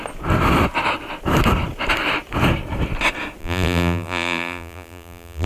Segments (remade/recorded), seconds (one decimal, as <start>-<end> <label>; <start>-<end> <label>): 0.0-3.4 recorded; 3.4-5.5 remade